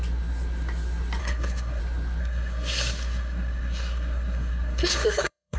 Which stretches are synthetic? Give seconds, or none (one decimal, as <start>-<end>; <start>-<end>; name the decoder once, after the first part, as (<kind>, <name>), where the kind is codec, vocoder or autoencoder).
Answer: 1.2-1.8 (codec, SNAC); 2.2-5.6